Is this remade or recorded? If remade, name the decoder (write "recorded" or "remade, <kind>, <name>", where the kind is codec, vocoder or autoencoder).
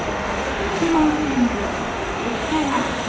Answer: remade, autoencoder, DAC-VAE